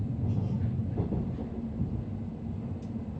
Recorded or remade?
recorded